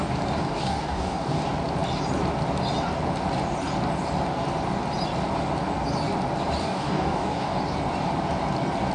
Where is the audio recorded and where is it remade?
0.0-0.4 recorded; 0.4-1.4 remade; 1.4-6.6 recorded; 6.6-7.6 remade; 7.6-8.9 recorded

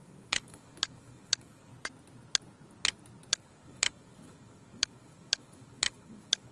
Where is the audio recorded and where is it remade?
0.0-1.7 remade; 1.7-3.3 recorded; 3.3-6.5 remade

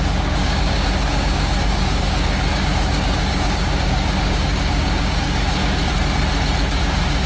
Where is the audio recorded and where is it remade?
0.0-5.9 remade; 5.9-6.7 recorded; 6.7-7.3 remade

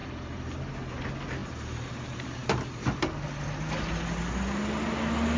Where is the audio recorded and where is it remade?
0.0-5.4 recorded

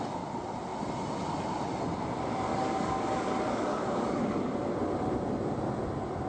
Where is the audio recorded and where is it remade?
0.0-2.5 recorded; 2.5-4.7 remade; 4.7-6.3 recorded

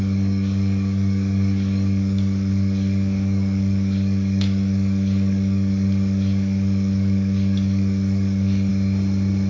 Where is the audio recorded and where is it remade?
0.0-8.7 remade; 8.7-9.5 recorded

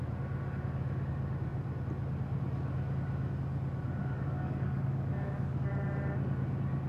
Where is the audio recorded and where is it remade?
0.0-4.0 recorded; 4.0-5.7 remade; 5.7-6.9 recorded